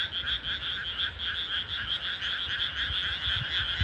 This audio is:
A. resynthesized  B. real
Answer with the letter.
B